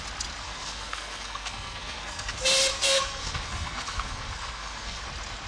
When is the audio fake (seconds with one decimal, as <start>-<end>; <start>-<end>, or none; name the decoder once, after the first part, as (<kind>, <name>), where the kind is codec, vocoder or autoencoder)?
0.4-2.3 (codec, SNAC); 2.7-5.0